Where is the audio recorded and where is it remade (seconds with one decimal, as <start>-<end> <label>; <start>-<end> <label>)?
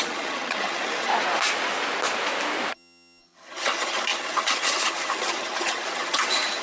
0.0-1.1 remade; 1.1-2.7 recorded; 2.7-6.6 remade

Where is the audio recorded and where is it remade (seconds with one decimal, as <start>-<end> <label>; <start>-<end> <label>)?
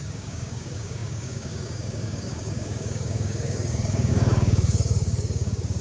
0.0-5.8 remade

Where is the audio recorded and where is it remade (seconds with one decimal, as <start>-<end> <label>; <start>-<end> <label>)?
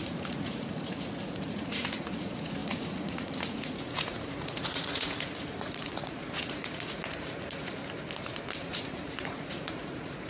0.0-7.8 remade; 7.8-8.6 recorded; 8.6-10.3 remade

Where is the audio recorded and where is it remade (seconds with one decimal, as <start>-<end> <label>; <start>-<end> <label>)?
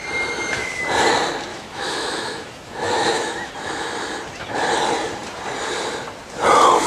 0.0-1.5 recorded; 1.5-3.5 remade; 3.5-6.9 recorded